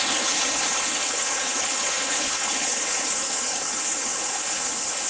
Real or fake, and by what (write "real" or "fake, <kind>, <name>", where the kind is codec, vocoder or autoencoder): fake, codec, HILCodec